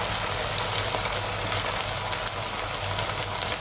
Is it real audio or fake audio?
real